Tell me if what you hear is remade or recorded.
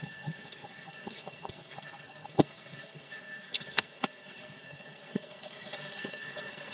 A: remade